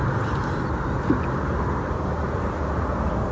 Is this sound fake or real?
real